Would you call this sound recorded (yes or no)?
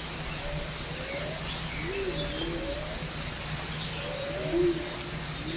yes